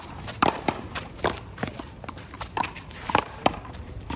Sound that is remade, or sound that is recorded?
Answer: remade